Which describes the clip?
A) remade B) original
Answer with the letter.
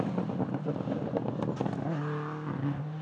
B